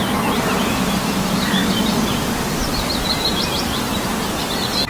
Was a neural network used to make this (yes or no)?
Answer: no